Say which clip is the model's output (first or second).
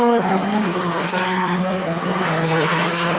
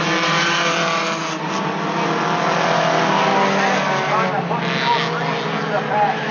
first